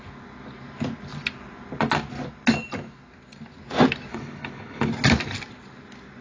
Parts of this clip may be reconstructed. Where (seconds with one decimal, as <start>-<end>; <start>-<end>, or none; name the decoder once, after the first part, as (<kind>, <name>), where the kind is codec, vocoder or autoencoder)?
4.1-4.9 (codec, HILCodec)